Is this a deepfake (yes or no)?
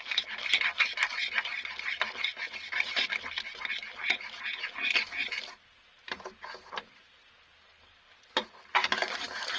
no